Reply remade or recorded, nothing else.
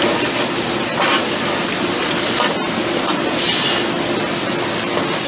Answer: remade